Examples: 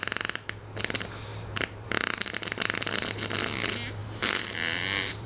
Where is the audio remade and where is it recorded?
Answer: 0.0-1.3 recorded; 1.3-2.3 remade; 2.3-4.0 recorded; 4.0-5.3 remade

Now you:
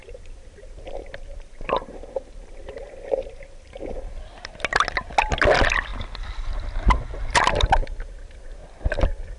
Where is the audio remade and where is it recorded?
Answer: 0.0-9.4 recorded